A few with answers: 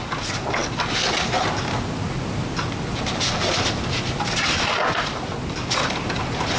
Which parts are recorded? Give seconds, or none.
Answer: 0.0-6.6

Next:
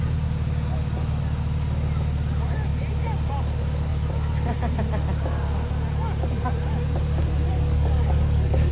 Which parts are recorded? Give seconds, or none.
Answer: 0.0-7.5

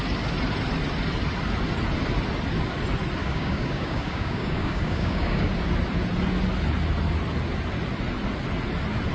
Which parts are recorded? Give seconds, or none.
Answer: 0.0-3.2; 5.5-9.1

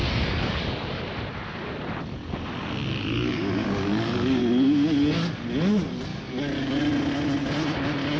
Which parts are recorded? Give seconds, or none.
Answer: 1.0-2.9; 4.4-6.1; 6.8-8.2

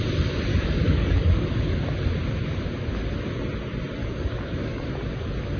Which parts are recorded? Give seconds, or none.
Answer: 0.0-0.5; 1.8-4.0; 4.8-5.6

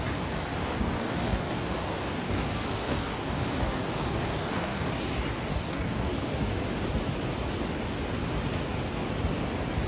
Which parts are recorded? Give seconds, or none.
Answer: 0.0-0.6; 4.9-5.5; 6.4-9.9

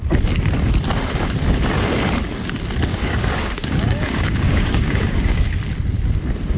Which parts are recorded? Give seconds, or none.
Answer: 0.0-2.9; 5.4-6.6

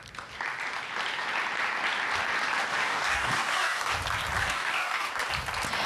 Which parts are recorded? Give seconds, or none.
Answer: 0.0-2.7; 3.9-4.4; 5.1-5.9